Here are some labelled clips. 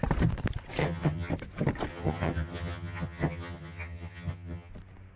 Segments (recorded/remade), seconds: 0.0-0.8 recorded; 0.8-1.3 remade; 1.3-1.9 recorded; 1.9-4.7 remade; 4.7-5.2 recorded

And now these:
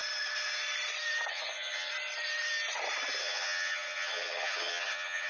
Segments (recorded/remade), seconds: 0.0-1.3 recorded; 1.3-1.9 remade; 1.9-3.2 recorded; 3.2-5.3 remade

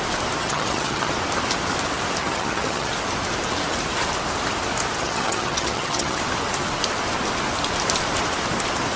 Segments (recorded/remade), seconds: 0.0-0.4 recorded; 0.4-1.1 remade; 1.1-2.2 recorded; 2.2-2.9 remade; 2.9-5.0 recorded; 5.0-6.2 remade; 6.2-9.0 recorded